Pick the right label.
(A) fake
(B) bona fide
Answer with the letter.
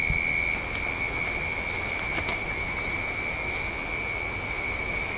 B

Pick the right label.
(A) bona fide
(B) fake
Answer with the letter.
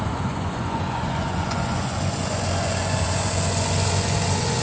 B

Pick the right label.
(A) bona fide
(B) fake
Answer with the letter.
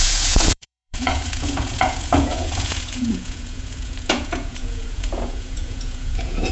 B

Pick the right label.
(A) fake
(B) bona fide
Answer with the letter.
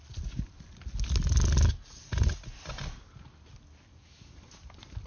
B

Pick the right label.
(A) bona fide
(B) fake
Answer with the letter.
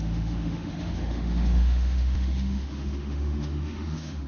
B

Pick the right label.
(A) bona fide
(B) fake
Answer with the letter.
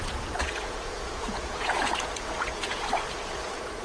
B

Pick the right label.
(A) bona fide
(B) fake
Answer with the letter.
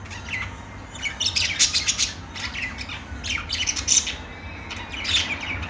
A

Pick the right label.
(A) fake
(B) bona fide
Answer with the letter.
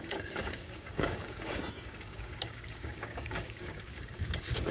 A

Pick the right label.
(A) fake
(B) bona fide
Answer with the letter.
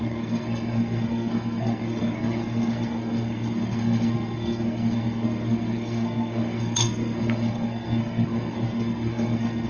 A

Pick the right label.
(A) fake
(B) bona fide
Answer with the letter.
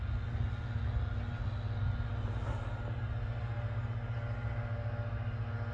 B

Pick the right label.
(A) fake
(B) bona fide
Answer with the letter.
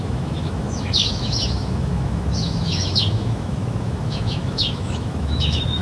A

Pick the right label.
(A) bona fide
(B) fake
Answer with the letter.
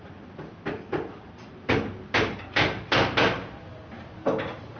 A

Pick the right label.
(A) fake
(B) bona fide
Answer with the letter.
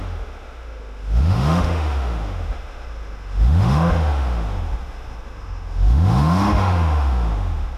A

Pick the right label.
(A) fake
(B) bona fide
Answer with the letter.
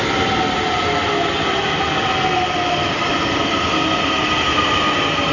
B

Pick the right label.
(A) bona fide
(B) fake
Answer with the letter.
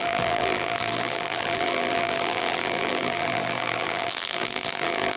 B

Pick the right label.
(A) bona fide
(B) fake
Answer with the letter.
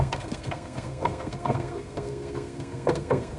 B